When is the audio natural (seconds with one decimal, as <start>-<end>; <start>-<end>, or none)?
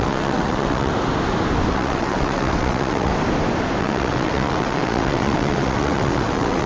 0.9-1.7; 3.1-3.8